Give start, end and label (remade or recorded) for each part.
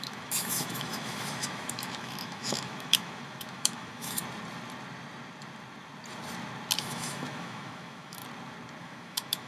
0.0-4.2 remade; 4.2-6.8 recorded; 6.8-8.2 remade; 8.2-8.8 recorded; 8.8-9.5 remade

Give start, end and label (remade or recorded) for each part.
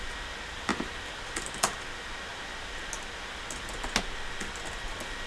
0.0-5.3 recorded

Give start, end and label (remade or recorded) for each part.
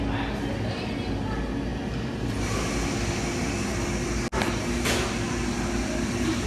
0.0-6.5 recorded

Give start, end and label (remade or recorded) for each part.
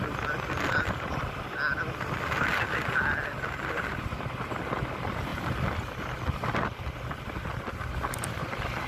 0.0-8.9 recorded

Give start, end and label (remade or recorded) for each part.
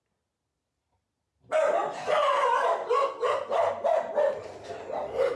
0.0-5.4 recorded